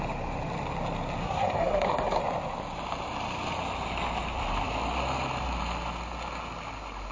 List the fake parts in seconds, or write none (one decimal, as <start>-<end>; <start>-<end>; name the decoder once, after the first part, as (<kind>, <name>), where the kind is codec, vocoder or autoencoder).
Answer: 1.2-2.2 (codec, SNAC)